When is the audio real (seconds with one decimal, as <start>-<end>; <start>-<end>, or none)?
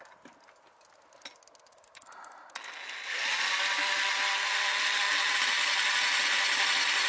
0.0-7.1